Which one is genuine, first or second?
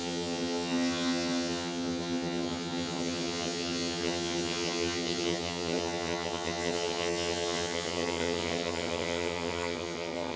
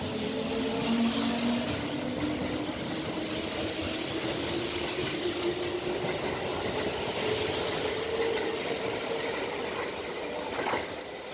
second